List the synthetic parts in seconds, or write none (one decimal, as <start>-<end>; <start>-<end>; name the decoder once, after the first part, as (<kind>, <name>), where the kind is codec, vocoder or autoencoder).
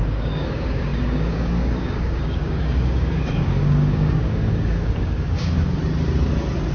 0.0-5.8 (codec, DAC)